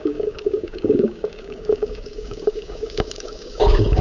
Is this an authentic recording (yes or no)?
no